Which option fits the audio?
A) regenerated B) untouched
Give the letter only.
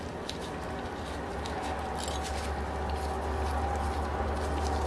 B